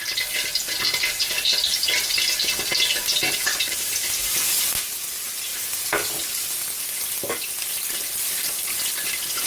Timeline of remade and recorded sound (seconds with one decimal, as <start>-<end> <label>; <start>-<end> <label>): 0.0-9.5 recorded